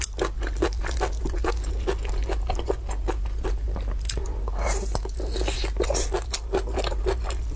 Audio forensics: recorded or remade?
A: recorded